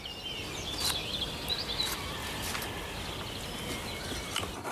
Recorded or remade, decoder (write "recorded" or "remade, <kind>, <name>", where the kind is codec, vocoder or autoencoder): recorded